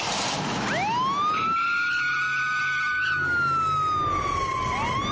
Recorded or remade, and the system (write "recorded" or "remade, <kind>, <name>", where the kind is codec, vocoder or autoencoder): recorded